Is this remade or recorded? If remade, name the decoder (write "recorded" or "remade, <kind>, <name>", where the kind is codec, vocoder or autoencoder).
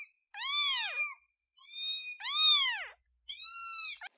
recorded